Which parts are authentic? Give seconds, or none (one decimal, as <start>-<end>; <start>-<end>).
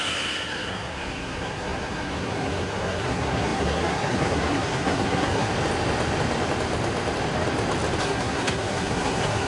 5.5-8.0